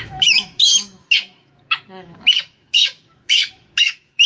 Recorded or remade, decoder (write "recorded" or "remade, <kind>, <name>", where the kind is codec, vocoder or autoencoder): remade, autoencoder, DAC-VAE